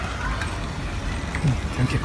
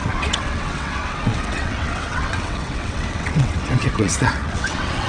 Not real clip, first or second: second